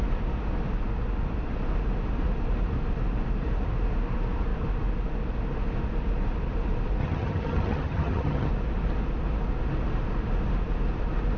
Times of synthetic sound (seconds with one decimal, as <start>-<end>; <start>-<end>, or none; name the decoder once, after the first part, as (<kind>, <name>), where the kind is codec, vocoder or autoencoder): 7.0-8.5 (vocoder, HiFi-GAN)